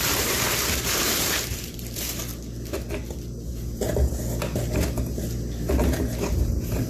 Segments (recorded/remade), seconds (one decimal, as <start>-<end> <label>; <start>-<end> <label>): 0.0-2.3 remade; 2.3-6.4 recorded; 6.4-6.9 remade